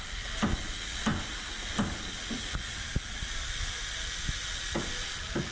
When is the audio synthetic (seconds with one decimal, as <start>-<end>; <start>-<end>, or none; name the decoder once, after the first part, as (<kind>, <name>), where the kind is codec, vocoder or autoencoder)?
none